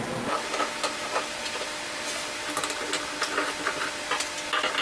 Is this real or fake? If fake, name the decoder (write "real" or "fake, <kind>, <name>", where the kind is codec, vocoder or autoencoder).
real